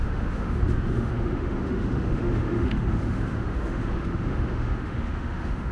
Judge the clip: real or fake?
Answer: fake